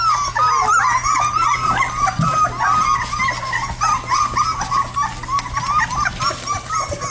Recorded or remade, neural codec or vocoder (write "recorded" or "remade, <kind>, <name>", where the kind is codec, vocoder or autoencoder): recorded